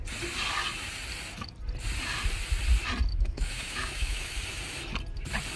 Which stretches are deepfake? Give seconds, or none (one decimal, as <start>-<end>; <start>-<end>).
3.1-4.4